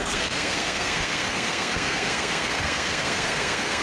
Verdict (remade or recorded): remade